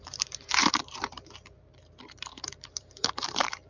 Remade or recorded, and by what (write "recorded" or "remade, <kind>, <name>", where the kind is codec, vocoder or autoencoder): remade, vocoder, BigVGAN v2